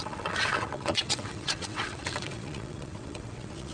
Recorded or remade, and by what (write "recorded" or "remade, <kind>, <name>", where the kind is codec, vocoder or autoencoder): remade, vocoder, WaveNeXt